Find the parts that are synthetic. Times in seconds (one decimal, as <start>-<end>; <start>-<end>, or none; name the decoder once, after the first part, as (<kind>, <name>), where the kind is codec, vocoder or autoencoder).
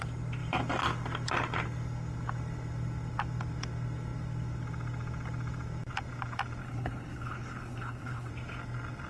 6.6-8.3 (codec, HILCodec)